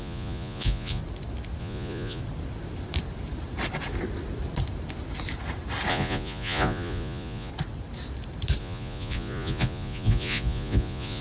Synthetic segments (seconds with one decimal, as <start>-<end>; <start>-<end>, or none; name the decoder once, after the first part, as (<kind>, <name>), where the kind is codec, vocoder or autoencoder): 0.0-1.0 (vocoder, Vocos); 1.6-2.2; 5.9-7.5; 8.6-11.2